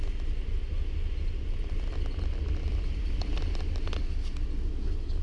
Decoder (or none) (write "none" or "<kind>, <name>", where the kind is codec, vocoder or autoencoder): none